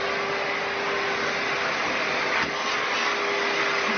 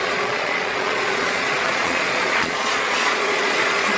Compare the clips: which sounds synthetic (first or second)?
second